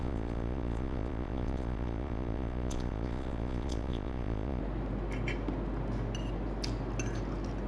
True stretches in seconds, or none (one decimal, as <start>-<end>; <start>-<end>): 4.6-7.7